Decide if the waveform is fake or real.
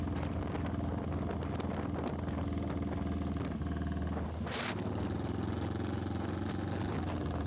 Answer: real